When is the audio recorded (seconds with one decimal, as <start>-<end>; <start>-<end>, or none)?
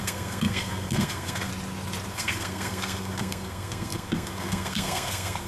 1.5-2.1